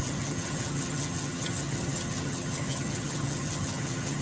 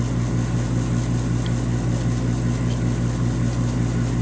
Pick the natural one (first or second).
second